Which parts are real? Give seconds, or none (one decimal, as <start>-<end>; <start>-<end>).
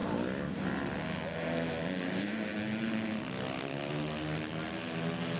0.0-5.4